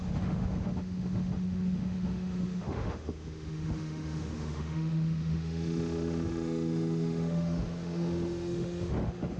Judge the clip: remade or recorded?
remade